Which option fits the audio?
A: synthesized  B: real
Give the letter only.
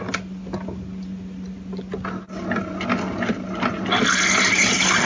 B